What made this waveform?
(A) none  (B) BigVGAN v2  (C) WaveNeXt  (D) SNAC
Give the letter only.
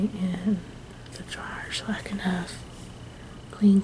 A